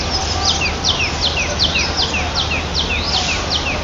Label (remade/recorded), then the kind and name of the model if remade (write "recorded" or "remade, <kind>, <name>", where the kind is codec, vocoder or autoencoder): recorded